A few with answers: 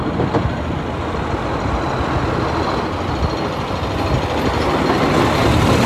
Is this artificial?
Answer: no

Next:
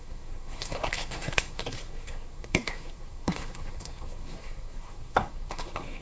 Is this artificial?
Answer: yes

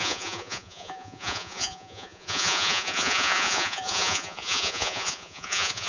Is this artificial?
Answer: yes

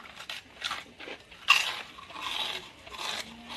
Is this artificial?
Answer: no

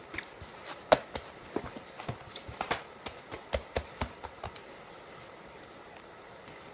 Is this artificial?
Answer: no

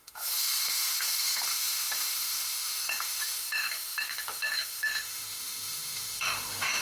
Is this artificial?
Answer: yes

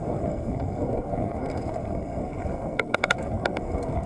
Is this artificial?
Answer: yes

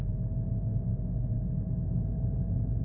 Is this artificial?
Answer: no